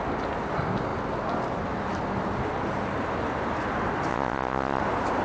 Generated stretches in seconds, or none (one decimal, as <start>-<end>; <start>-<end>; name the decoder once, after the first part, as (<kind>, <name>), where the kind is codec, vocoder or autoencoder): 4.1-4.8 (vocoder, Vocos)